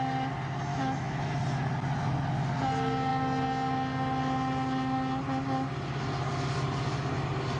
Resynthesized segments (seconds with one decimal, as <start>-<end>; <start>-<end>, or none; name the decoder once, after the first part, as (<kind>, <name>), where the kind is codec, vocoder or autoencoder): 0.7-1.3 (autoencoder, DAC-VAE)